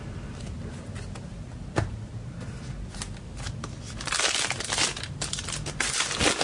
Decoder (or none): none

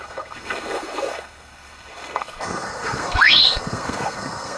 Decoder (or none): codec, SNAC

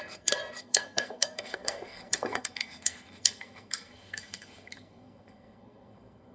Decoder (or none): codec, SNAC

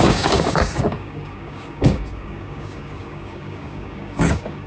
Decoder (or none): codec, DAC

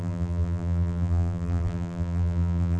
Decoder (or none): vocoder, BigVGAN v2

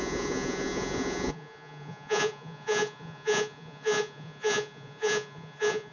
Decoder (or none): vocoder, Vocos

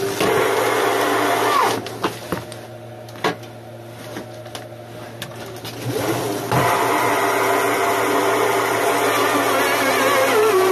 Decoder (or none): none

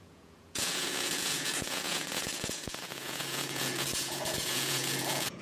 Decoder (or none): vocoder, Vocos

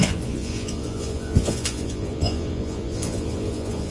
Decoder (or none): vocoder, Vocos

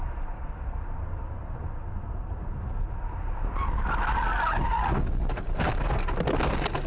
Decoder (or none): none